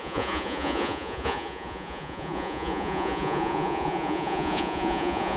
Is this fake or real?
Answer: fake